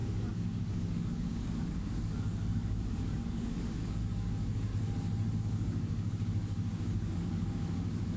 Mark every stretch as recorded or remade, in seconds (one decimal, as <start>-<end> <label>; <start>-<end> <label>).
0.0-4.7 remade; 4.7-5.4 recorded; 5.4-8.2 remade